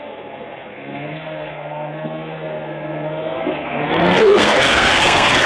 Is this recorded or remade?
remade